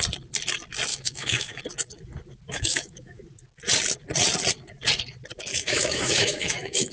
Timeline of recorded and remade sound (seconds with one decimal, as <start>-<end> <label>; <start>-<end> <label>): 0.0-0.9 recorded; 0.9-1.6 remade; 1.6-2.5 recorded; 2.5-3.2 remade; 3.2-5.5 recorded; 5.5-6.9 remade